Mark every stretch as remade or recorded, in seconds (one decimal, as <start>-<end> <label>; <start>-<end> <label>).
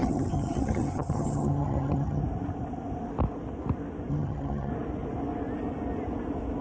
0.0-2.2 remade; 2.2-4.1 recorded; 4.1-4.7 remade; 4.7-6.6 recorded